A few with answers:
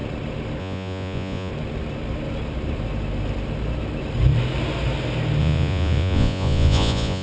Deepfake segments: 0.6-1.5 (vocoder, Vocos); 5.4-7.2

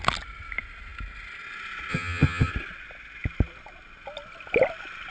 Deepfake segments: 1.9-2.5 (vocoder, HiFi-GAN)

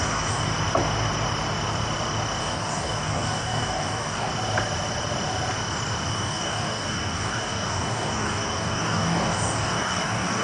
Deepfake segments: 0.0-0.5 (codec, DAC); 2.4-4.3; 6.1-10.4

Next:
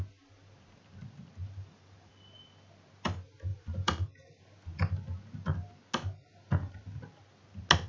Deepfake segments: 1.4-2.1 (vocoder, BigVGAN v2); 3.5-4.4

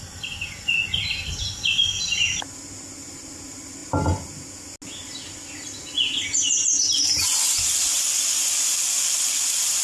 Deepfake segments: none

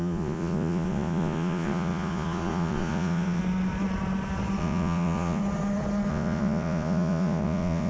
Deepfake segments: 0.0-3.4 (vocoder, Vocos); 4.6-5.4; 6.1-7.9

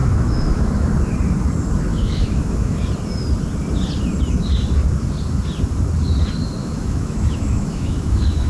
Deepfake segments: 0.0-0.9 (autoencoder, DAC-VAE); 1.9-2.8; 6.6-8.5

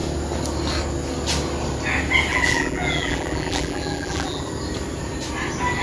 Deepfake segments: 2.3-4.4 (vocoder, BigVGAN v2)